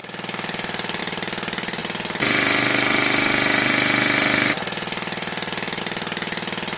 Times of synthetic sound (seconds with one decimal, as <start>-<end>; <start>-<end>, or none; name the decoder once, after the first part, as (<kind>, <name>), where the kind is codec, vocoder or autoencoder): none